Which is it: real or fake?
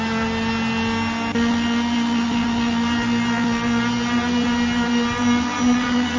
real